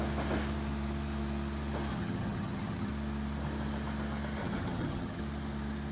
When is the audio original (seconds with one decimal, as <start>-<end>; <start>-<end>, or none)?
0.0-1.9; 2.9-4.4; 5.2-5.9